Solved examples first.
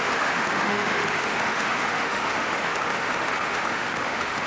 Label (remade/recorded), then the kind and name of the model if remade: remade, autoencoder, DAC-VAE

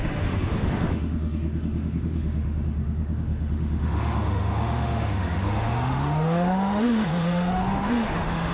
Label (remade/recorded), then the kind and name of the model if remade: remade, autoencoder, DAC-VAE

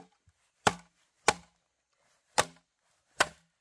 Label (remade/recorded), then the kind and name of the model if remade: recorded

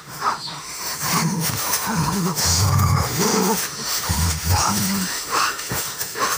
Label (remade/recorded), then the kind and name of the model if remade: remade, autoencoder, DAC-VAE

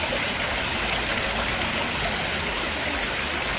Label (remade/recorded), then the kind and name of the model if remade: recorded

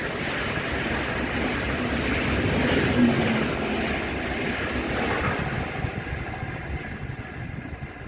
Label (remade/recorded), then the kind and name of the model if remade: recorded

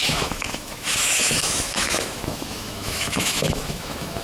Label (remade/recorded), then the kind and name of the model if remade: remade, autoencoder, DAC-VAE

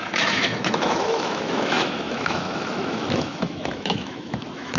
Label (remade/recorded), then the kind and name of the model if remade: remade, autoencoder, DAC-VAE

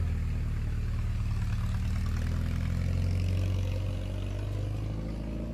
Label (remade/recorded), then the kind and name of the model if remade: recorded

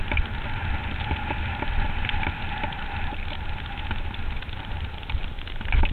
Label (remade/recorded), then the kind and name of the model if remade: recorded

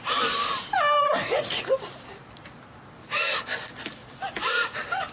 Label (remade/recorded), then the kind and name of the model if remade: recorded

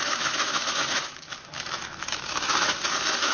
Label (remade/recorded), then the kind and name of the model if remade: remade, autoencoder, DAC-VAE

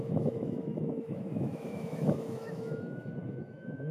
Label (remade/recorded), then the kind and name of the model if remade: remade, autoencoder, DAC-VAE